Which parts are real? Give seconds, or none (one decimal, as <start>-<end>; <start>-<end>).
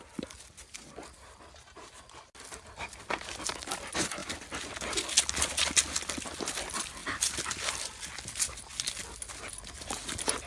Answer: 0.0-10.5